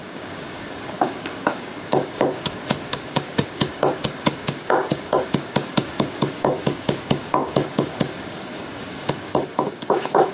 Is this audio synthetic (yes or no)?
yes